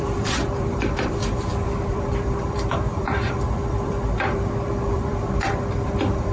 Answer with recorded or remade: remade